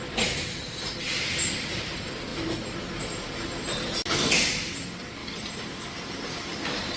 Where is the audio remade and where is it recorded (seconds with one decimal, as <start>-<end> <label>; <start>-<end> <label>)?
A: 0.0-7.0 recorded